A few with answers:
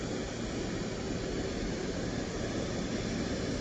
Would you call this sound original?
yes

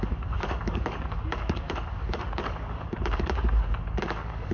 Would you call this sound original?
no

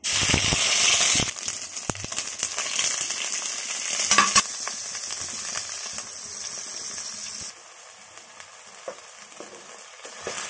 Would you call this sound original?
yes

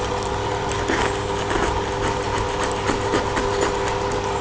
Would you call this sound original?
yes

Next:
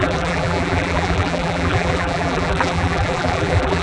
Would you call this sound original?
no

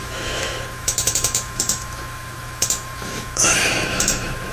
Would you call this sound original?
no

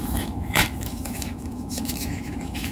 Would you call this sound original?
no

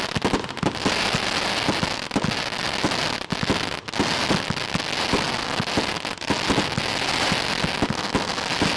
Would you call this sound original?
yes